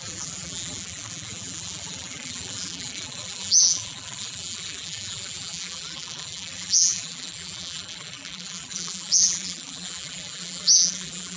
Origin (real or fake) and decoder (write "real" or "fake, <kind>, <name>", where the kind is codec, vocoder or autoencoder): fake, vocoder, BigVGAN v2